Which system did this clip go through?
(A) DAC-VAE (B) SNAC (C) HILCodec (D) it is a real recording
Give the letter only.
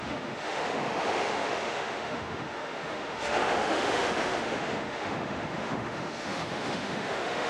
A